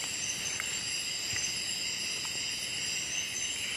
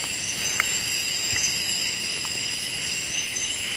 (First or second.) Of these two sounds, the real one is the first